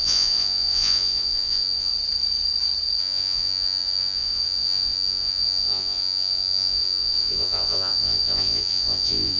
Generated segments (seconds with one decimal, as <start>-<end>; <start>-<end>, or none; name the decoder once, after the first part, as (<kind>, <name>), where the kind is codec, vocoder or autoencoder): 0.0-1.9 (vocoder, Vocos); 3.0-9.4